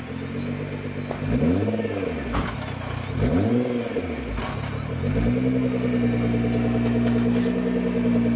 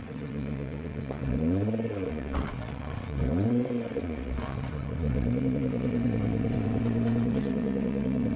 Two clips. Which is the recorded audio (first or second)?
first